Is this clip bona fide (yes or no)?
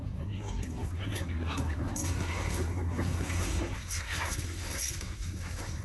no